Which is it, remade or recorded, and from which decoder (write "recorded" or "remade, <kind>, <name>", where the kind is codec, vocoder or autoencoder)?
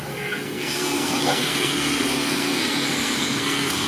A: remade, codec, SNAC